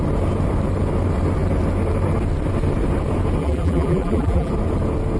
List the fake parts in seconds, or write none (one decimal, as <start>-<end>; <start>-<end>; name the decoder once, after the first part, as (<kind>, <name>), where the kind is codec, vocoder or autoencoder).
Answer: 3.4-4.5 (vocoder, BigVGAN v2)

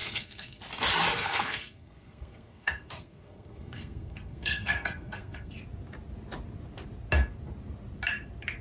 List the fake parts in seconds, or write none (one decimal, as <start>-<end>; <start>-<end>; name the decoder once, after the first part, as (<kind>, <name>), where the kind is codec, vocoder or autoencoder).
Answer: 0.0-0.6 (codec, SNAC); 1.2-5.5

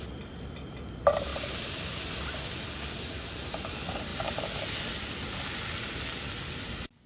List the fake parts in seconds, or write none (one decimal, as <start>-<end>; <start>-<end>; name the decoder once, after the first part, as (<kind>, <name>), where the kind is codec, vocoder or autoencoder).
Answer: none